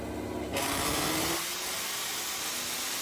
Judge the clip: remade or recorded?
recorded